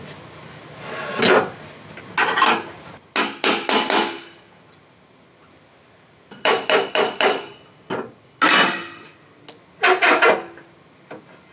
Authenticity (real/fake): real